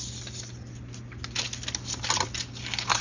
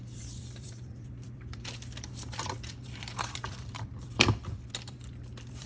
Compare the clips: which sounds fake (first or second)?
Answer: second